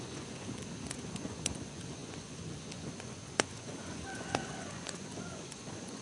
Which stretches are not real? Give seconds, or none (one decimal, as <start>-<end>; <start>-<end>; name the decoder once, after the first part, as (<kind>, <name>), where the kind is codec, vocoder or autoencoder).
0.0-6.0 (vocoder, Vocos)